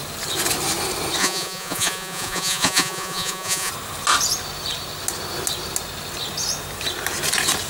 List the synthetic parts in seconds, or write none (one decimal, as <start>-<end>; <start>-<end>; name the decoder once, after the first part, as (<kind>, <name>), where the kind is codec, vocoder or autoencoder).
1.2-3.7 (vocoder, Vocos)